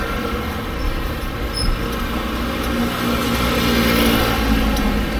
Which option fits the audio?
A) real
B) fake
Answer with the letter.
A